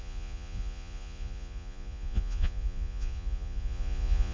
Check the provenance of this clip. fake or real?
fake